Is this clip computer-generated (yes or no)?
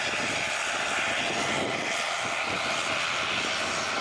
no